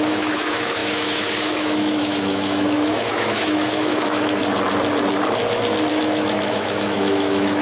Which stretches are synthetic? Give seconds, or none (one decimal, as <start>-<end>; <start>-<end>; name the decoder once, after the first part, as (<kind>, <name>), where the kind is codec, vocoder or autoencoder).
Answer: 0.0-4.4 (autoencoder, DAC-VAE); 5.9-7.6